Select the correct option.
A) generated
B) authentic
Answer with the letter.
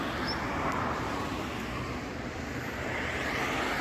B